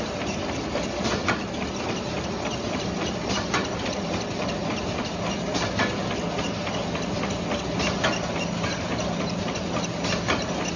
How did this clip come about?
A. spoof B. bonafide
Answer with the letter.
B